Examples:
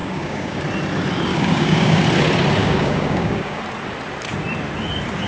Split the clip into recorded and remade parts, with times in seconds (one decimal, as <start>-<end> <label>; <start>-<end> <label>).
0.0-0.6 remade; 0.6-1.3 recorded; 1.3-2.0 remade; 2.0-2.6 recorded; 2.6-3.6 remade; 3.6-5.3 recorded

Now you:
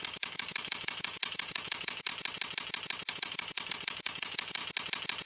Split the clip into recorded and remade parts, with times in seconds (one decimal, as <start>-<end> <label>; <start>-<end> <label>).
0.0-2.1 remade; 2.1-3.1 recorded; 3.1-4.6 remade; 4.6-5.3 recorded

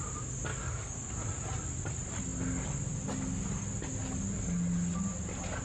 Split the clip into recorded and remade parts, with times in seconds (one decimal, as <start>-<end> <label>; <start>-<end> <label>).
0.0-0.5 recorded; 0.5-1.1 remade; 1.1-5.6 recorded

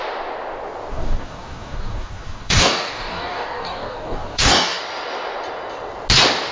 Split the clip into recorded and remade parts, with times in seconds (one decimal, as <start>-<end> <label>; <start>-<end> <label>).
0.0-0.9 recorded; 0.9-4.8 remade; 4.8-6.5 recorded

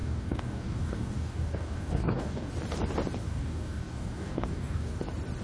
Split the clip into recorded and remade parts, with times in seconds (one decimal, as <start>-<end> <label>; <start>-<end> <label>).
0.0-2.5 remade; 2.5-3.2 recorded; 3.2-5.0 remade; 5.0-5.4 recorded

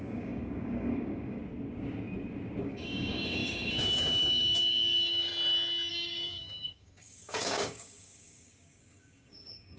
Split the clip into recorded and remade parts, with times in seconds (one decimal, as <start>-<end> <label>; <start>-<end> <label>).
0.0-1.4 remade; 1.4-2.6 recorded; 2.6-5.3 remade; 5.3-5.9 recorded; 5.9-9.8 remade

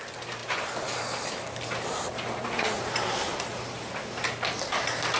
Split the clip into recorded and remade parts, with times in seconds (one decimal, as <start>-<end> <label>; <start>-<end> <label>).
0.0-5.2 recorded

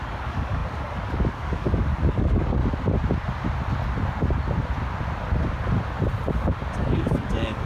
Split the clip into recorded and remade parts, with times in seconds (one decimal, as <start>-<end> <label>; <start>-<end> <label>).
0.0-2.6 remade; 2.6-6.8 recorded; 6.8-7.7 remade